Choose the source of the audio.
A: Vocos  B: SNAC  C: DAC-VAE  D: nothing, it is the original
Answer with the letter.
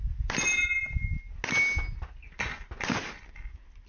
D